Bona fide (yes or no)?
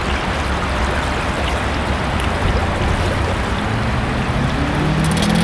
yes